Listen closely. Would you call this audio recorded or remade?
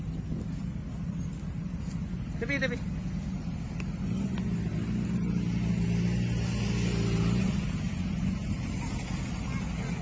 recorded